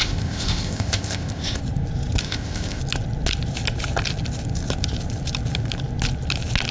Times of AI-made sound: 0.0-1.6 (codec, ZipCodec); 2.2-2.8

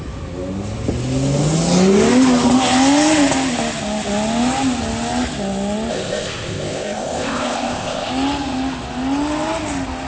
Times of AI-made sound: 5.9-8.1 (codec, ZipCodec)

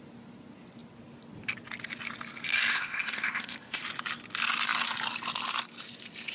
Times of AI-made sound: 2.7-3.8 (codec, ZipCodec)

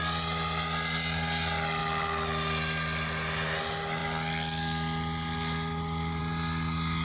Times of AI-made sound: none

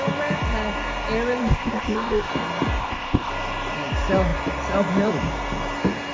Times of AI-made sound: 1.4-2.3 (codec, ZipCodec); 2.8-3.3